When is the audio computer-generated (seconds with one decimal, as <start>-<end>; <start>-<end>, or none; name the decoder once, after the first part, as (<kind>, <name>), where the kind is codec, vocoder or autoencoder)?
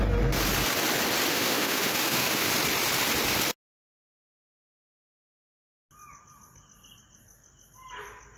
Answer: 1.3-2.5 (autoencoder, DAC-VAE)